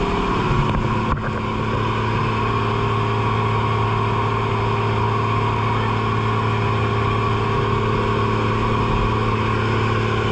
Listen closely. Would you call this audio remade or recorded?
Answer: recorded